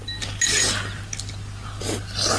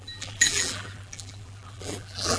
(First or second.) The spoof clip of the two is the second